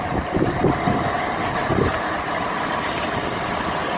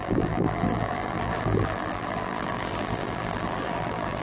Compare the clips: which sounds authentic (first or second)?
first